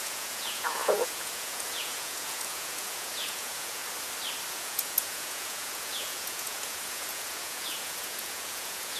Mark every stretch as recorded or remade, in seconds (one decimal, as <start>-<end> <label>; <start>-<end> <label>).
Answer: 0.0-3.8 remade; 3.8-4.5 recorded; 4.5-9.0 remade